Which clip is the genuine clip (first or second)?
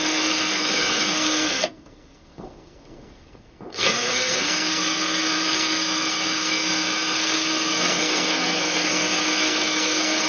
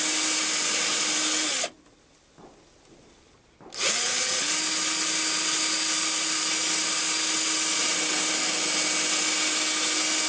second